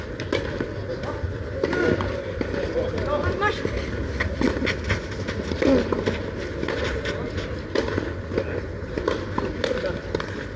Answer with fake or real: real